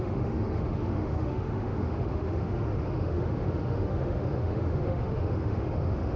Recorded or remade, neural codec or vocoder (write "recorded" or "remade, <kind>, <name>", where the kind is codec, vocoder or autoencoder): remade, autoencoder, DAC-VAE